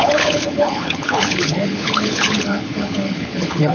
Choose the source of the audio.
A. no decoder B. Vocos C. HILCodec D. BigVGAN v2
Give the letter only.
C